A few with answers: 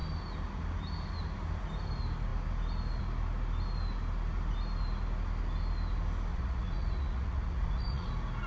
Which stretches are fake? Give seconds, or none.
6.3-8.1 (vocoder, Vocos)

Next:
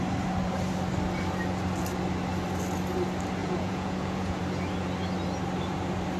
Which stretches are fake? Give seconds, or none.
3.4-4.4 (vocoder, Vocos)